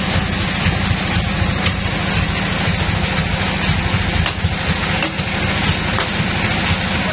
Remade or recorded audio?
recorded